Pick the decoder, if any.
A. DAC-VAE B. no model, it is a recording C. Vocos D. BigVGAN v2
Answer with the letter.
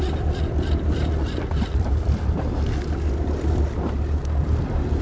B